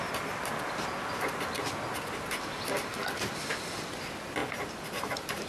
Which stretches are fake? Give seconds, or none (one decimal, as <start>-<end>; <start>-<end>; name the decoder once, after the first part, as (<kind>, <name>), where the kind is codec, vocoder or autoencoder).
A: 4.4-5.5 (vocoder, BigVGAN v2)